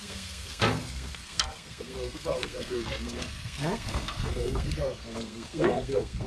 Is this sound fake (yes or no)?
yes